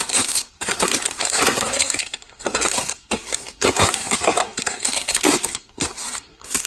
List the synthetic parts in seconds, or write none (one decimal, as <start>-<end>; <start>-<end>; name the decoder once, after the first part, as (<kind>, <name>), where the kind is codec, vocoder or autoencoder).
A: 0.0-6.7 (codec, SNAC)